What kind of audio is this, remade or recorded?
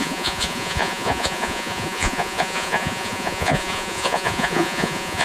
remade